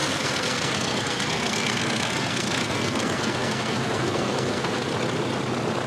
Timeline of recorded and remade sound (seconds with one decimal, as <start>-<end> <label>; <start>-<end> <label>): 0.0-4.9 remade; 4.9-5.9 recorded